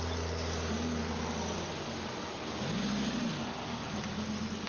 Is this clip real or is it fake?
real